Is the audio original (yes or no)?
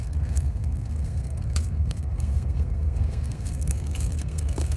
no